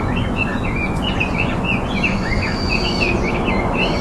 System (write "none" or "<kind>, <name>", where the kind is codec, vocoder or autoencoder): vocoder, Vocos